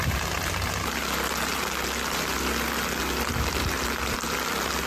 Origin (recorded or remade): recorded